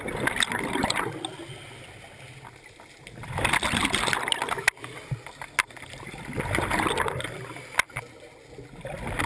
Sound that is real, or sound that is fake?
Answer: real